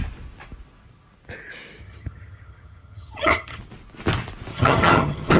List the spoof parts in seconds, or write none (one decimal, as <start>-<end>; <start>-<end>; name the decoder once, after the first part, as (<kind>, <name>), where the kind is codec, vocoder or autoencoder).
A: 1.8-3.6 (vocoder, HiFi-GAN); 4.5-5.4